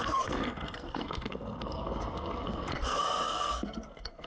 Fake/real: fake